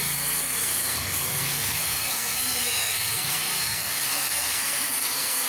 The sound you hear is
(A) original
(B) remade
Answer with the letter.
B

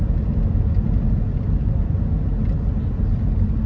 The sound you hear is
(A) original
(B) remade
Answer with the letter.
A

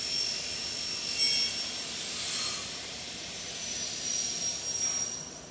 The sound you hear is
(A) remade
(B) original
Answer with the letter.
B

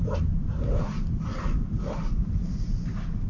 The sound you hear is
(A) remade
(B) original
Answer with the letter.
B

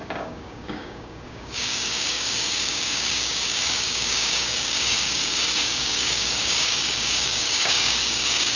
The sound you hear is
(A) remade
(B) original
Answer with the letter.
A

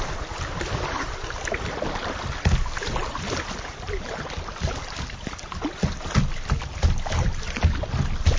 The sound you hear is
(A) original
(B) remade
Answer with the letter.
A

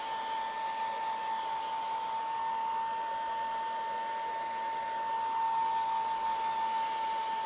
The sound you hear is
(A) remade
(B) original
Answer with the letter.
B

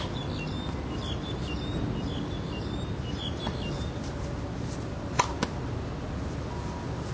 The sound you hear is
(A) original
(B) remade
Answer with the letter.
A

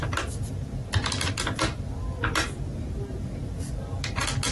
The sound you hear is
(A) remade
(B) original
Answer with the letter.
B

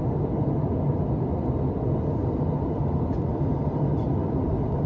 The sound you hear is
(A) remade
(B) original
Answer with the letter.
B